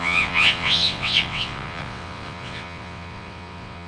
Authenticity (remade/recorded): remade